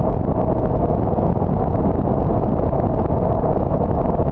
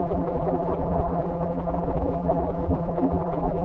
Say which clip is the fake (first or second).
second